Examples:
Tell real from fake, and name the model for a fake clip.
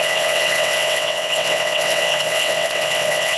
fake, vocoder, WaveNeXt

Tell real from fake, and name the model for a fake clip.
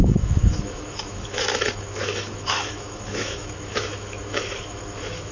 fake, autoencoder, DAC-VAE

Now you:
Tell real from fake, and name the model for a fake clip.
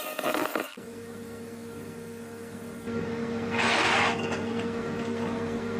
fake, codec, SNAC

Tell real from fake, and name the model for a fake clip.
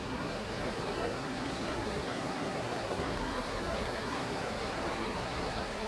fake, codec, SNAC